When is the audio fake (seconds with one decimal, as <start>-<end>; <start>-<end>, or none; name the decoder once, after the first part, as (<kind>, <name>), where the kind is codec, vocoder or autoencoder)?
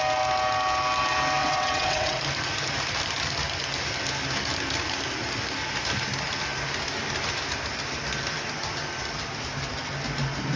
1.4-2.2 (vocoder, WaveNeXt)